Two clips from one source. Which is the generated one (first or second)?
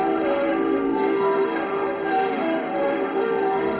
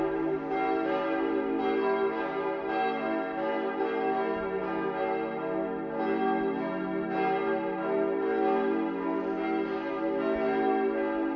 first